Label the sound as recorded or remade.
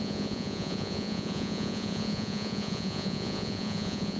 remade